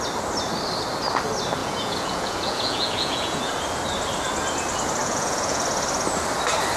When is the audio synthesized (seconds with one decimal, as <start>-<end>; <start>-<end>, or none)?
1.6-3.5; 5.0-5.6